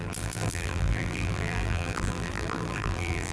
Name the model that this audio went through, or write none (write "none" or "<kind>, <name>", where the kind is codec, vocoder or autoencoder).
vocoder, BigVGAN v2